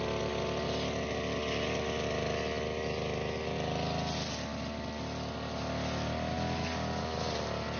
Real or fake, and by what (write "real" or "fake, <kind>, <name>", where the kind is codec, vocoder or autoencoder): real